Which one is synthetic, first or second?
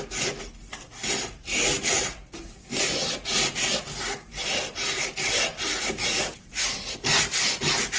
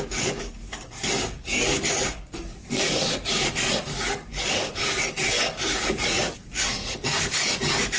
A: second